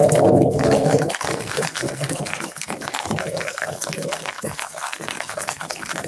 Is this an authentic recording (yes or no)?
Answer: no